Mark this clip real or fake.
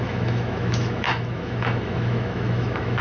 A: fake